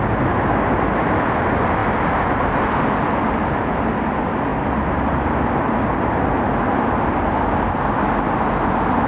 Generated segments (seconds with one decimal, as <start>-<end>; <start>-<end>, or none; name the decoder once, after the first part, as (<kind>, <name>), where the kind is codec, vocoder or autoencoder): none